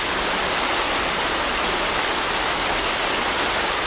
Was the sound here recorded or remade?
recorded